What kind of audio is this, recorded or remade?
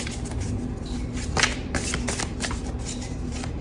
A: recorded